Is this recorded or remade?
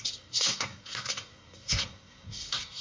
remade